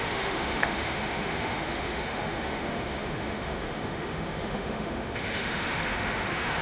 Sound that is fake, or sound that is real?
fake